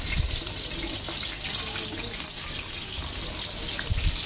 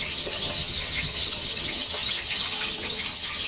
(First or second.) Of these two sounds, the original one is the first